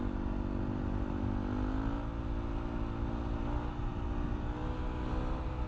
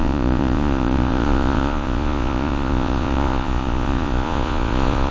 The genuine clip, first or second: first